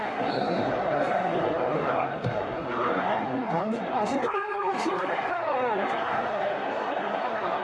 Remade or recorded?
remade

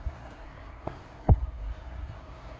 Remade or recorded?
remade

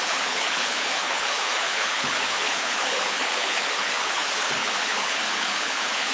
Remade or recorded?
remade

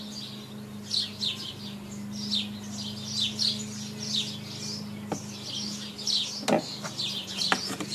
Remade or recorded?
recorded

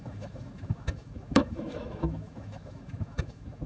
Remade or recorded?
remade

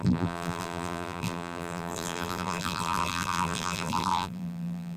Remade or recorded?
remade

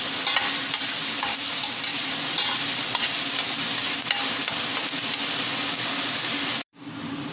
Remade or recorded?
recorded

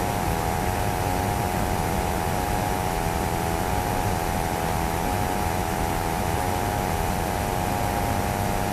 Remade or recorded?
recorded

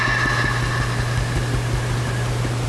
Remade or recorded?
recorded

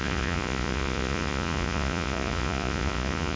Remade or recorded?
remade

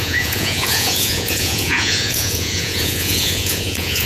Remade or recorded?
remade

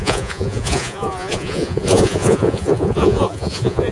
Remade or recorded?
remade